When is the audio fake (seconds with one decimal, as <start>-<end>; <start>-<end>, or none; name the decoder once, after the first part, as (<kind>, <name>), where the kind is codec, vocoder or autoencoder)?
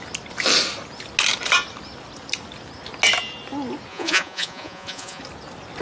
3.9-5.2 (vocoder, Vocos)